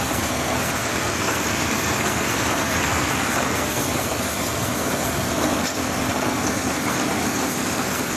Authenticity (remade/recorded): remade